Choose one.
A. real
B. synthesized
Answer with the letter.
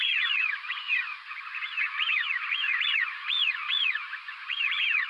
B